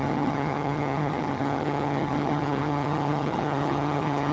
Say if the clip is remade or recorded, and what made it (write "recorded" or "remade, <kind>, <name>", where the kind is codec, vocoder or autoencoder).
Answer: remade, vocoder, HiFi-GAN